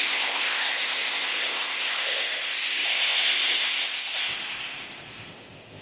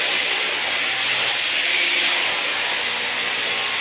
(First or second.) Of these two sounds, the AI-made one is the first